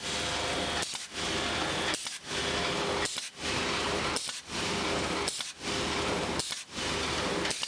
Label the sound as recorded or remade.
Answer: recorded